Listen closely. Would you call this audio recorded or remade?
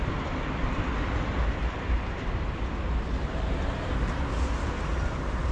recorded